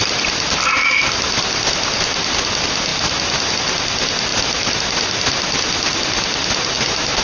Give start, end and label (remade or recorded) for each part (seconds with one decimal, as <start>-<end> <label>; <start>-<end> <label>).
0.0-4.3 recorded; 4.3-4.8 remade; 4.8-7.2 recorded